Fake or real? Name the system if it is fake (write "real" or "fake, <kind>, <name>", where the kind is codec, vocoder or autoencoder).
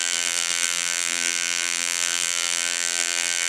fake, vocoder, BigVGAN v2